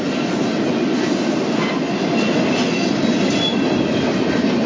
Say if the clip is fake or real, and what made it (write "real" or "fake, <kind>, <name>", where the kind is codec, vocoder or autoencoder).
real